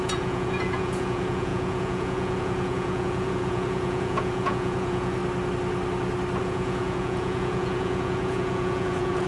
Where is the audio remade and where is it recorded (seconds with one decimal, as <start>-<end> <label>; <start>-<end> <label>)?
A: 0.0-5.2 remade; 5.2-6.4 recorded; 6.4-9.3 remade